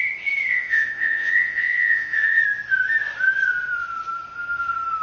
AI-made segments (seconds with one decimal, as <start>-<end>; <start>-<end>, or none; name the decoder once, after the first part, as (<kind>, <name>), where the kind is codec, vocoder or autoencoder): 0.5-2.4 (vocoder, Vocos)